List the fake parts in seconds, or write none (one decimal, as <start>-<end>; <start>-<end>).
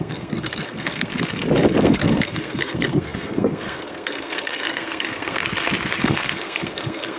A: 0.0-1.1; 1.8-5.4; 6.0-7.2